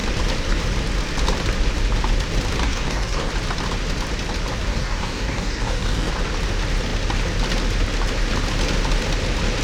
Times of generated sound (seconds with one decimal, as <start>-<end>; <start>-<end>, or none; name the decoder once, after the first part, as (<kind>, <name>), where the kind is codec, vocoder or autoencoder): 2.6-3.3 (codec, DAC); 4.7-6.1